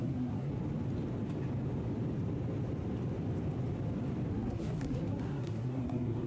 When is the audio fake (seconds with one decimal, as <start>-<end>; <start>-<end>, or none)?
0.0-0.5; 4.3-6.3